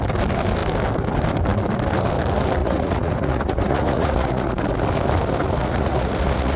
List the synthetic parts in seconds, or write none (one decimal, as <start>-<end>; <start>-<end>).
2.6-4.6; 5.6-6.6